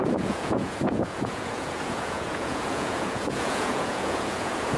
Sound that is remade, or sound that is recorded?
remade